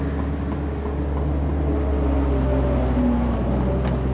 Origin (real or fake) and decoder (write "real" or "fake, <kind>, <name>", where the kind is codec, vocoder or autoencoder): real